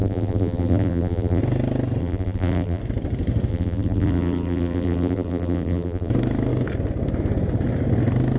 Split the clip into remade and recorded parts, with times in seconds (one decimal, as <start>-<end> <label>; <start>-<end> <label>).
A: 0.0-1.4 remade; 1.4-2.0 recorded; 2.0-2.8 remade; 2.8-3.5 recorded; 3.5-6.1 remade; 6.1-8.4 recorded